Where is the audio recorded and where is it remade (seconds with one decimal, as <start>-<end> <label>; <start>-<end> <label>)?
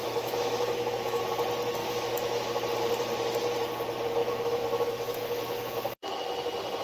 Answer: 0.0-1.2 remade; 1.2-1.8 recorded; 1.8-2.5 remade; 2.5-4.2 recorded; 4.2-5.2 remade; 5.2-6.8 recorded